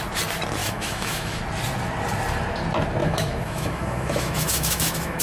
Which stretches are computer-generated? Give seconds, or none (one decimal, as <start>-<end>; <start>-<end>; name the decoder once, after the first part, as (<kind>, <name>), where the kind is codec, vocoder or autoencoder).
0.6-1.4 (autoencoder, DAC-VAE); 3.0-5.2